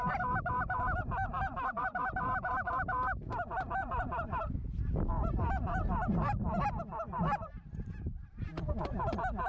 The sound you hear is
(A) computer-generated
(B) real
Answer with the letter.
A